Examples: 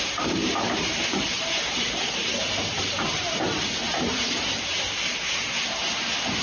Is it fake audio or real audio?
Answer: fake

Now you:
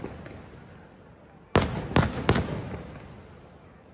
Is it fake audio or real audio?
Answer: real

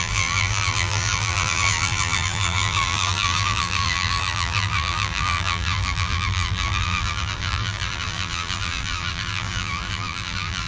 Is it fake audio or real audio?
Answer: fake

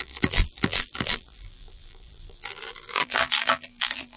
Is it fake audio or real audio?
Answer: fake